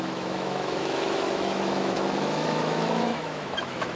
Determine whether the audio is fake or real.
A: fake